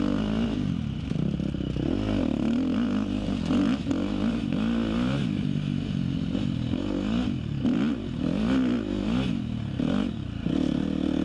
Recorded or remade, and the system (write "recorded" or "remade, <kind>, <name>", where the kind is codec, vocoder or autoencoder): recorded